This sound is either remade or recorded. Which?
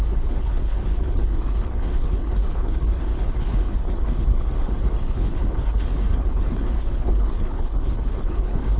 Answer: remade